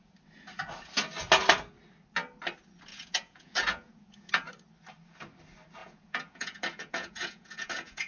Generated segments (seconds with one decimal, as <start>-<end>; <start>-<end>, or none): 2.9-4.5; 5.8-8.1